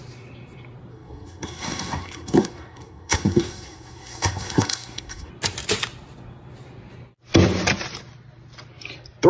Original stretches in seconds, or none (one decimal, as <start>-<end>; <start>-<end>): 0.0-0.9; 5.3-9.3